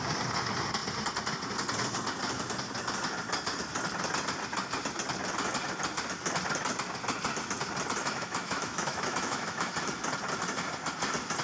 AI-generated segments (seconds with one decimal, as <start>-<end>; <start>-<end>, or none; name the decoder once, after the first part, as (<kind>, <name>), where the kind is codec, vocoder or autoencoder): 8.0-9.7 (autoencoder, DAC-VAE)